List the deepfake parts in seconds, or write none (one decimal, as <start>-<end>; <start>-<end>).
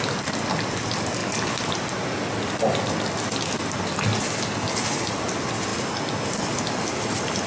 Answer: none